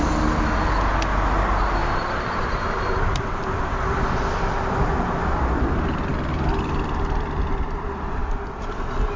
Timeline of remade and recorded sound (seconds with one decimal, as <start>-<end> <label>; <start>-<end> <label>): 0.0-1.8 recorded; 1.8-3.6 remade; 3.6-9.2 recorded